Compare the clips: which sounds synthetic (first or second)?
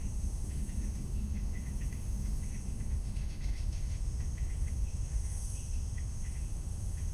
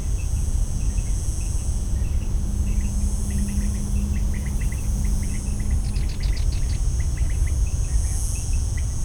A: first